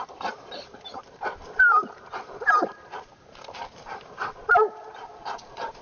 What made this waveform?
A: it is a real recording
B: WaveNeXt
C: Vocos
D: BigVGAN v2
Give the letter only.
D